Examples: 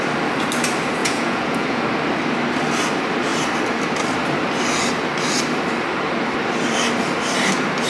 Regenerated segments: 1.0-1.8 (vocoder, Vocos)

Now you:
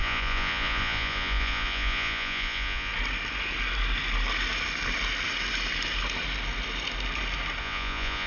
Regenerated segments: 0.0-2.9 (vocoder, Vocos); 7.6-8.3

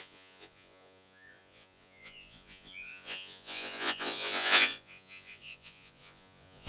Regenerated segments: 0.0-6.7 (vocoder, Vocos)